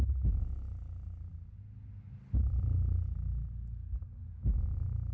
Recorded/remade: recorded